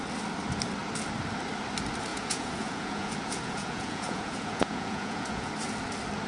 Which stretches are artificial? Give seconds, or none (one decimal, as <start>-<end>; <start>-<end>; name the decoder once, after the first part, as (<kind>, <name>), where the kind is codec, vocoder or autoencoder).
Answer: 2.1-5.5 (vocoder, Vocos)